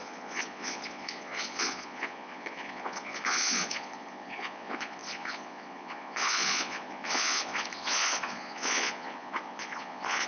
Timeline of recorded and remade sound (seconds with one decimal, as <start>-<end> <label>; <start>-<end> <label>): 0.0-10.3 remade